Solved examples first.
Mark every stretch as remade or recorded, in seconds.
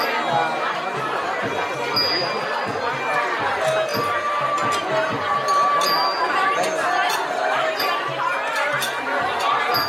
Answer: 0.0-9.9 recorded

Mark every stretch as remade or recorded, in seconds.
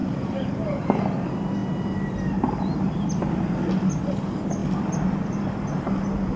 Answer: 0.0-1.0 remade; 1.0-1.6 recorded; 1.6-4.0 remade; 4.0-6.4 recorded